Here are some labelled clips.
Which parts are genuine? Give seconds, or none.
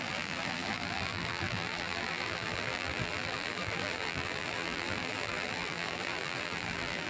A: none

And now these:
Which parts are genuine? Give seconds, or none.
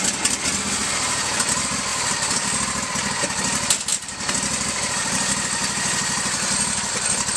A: 0.0-0.8; 1.3-1.9; 2.9-3.9; 5.1-7.4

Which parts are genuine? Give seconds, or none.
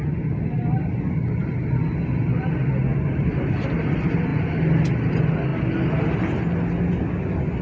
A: 0.0-2.9; 3.9-7.6